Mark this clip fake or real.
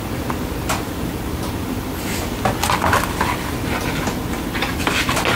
real